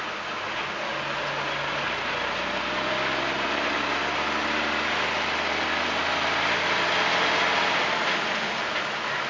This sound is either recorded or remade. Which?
recorded